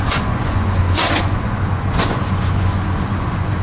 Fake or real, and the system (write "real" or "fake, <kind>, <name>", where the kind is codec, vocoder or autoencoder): fake, vocoder, Vocos